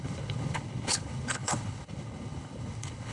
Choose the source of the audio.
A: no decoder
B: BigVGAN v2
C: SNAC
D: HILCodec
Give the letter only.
D